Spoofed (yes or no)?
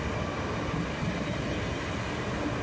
no